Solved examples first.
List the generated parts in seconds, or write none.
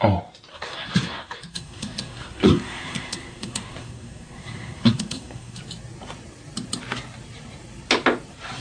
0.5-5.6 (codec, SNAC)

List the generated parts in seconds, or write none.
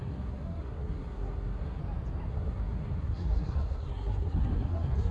0.0-1.8 (codec, SNAC); 2.3-5.1